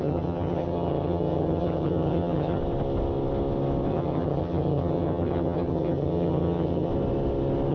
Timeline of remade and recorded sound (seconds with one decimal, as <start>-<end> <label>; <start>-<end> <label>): 0.0-2.6 remade; 2.6-3.9 recorded; 3.9-6.9 remade; 6.9-7.7 recorded